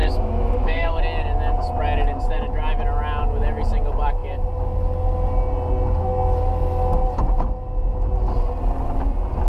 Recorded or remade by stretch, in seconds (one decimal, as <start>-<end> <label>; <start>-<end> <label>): 0.0-1.0 remade; 1.0-9.5 recorded